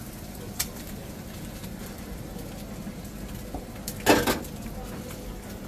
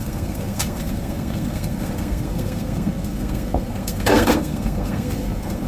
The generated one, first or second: second